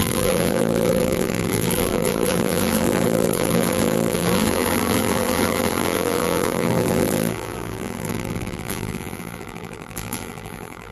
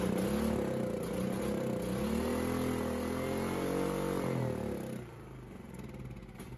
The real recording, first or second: second